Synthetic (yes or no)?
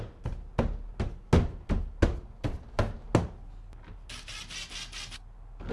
no